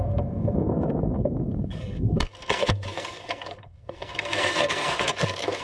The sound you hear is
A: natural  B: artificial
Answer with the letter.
B